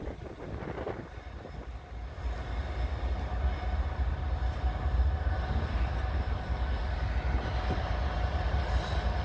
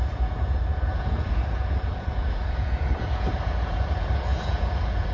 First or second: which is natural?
first